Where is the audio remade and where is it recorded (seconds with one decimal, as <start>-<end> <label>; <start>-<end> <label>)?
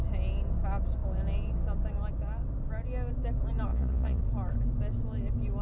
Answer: 0.0-3.7 recorded; 3.7-4.2 remade; 4.2-5.6 recorded